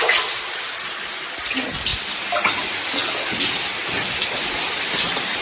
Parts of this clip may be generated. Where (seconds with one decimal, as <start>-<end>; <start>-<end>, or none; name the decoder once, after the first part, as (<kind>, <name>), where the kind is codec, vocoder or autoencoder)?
none